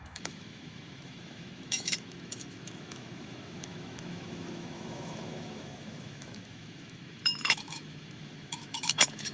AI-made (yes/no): yes